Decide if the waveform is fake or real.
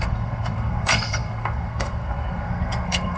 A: fake